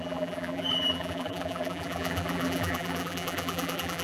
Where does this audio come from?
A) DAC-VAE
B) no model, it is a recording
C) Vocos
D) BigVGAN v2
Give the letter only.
D